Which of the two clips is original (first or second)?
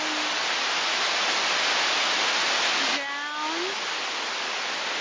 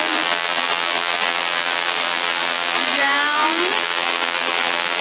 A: first